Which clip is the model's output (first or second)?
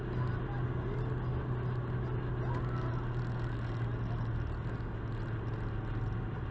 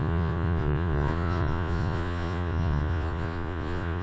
second